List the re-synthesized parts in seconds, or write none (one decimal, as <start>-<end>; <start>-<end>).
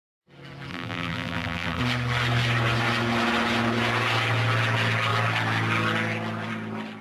0.7-1.8